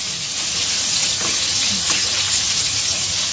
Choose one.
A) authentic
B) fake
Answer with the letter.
B